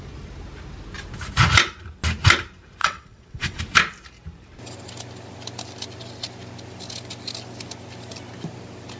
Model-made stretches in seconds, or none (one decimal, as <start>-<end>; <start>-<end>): 2.8-3.6